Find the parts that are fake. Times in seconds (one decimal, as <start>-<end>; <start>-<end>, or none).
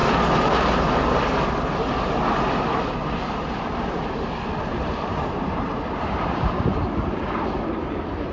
4.7-6.9